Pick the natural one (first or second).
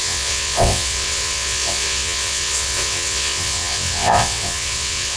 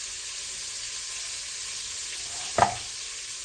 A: second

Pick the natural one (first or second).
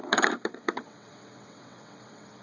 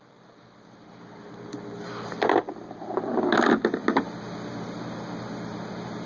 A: second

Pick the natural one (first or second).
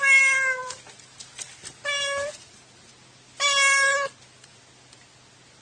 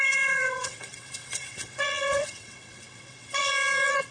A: first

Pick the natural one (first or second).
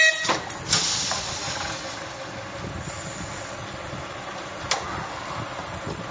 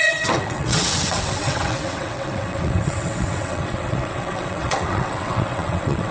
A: first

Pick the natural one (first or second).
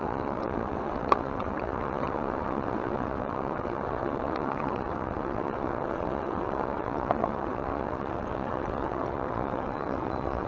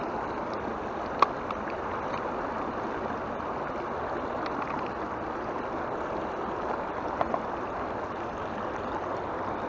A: second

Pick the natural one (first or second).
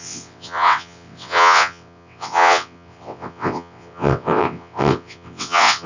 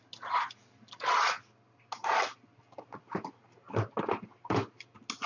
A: second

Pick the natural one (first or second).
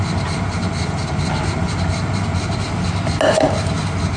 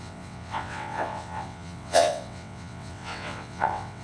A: first